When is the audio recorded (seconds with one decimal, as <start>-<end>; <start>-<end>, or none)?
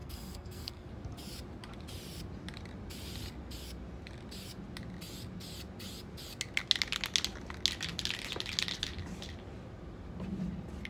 0.9-10.9